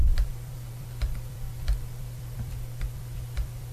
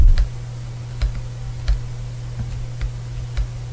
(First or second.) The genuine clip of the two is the second